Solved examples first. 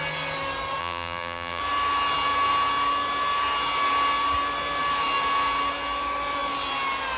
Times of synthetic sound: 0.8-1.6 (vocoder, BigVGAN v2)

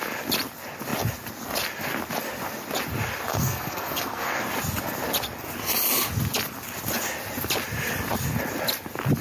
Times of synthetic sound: 3.3-4.4 (codec, SNAC)

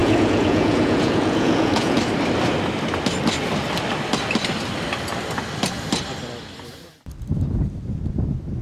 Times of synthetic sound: 0.0-2.0 (vocoder, Vocos)